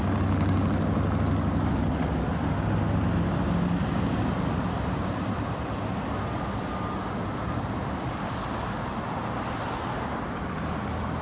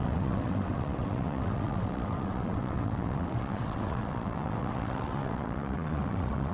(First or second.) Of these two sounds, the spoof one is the second